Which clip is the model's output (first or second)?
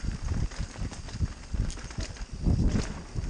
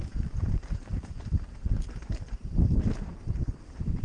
second